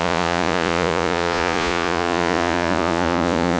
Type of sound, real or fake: fake